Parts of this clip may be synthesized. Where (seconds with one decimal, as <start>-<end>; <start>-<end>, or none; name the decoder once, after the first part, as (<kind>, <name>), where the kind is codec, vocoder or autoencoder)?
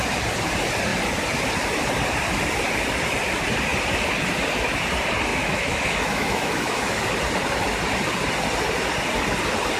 5.3-7.0 (autoencoder, DAC-VAE)